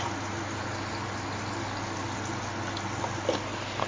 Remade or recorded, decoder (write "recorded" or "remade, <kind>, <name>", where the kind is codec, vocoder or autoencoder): recorded